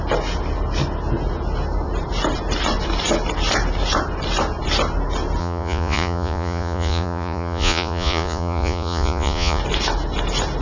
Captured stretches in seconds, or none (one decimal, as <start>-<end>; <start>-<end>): 0.0-5.4; 9.6-10.6